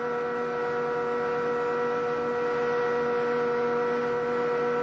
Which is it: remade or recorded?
recorded